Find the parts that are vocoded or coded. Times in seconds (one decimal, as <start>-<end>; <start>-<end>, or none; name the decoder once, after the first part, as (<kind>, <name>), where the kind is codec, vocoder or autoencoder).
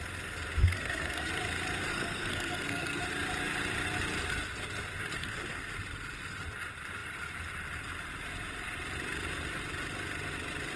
0.6-1.3 (codec, SNAC); 1.9-3.0; 5.2-5.7